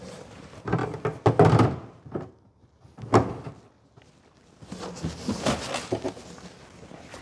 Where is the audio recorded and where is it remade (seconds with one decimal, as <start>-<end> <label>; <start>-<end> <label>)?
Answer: 0.0-0.8 remade; 0.8-1.5 recorded; 1.5-3.1 remade; 3.1-7.2 recorded